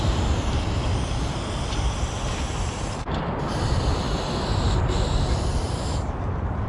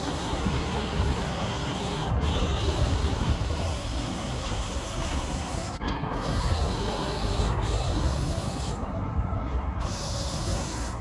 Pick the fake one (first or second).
second